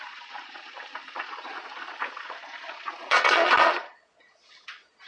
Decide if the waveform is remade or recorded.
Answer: remade